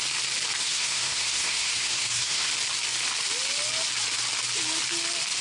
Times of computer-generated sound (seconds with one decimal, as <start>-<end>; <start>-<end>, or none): 0.6-2.5